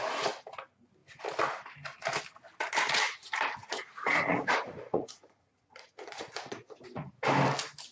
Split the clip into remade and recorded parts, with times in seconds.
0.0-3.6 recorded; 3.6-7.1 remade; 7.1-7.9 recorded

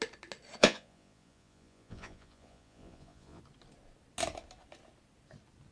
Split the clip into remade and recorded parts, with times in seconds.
0.0-0.6 recorded; 0.6-3.4 remade; 3.4-5.7 recorded

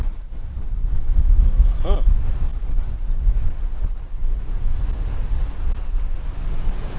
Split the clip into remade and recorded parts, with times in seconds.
0.0-4.2 recorded; 4.2-4.8 remade; 4.8-7.0 recorded

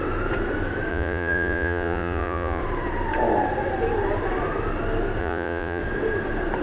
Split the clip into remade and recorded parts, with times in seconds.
0.0-0.9 recorded; 0.9-2.6 remade; 2.6-5.2 recorded; 5.2-5.8 remade; 5.8-6.6 recorded

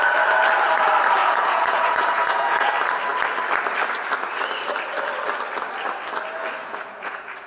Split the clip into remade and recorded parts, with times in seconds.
0.0-1.2 recorded; 1.2-2.7 remade; 2.7-6.6 recorded; 6.6-7.5 remade

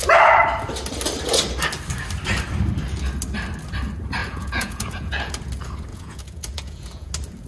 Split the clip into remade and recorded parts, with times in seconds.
0.0-4.2 recorded; 4.2-5.3 remade; 5.3-5.9 recorded; 5.9-7.1 remade; 7.1-7.5 recorded

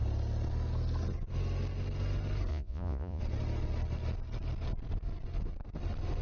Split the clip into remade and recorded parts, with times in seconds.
0.0-2.5 recorded; 2.5-3.2 remade; 3.2-6.2 recorded